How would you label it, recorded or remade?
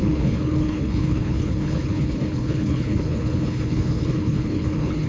remade